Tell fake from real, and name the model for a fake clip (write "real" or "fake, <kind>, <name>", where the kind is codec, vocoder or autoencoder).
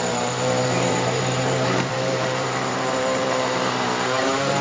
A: fake, vocoder, BigVGAN v2